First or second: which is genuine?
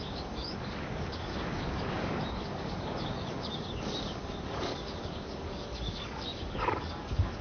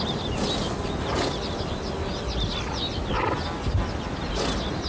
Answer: second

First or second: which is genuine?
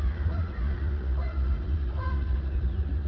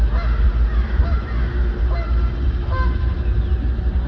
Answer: second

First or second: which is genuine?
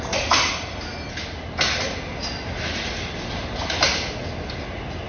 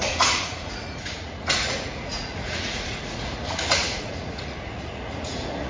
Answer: first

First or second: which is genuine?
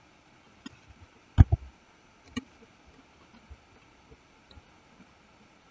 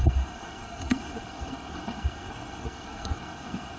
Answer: first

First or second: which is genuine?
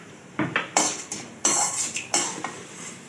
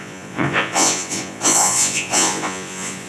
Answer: first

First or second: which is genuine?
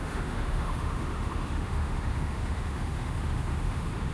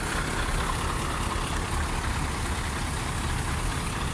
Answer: second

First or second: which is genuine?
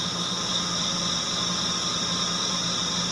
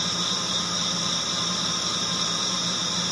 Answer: first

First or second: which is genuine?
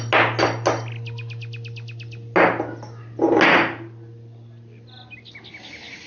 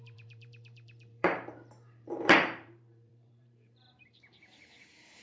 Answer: first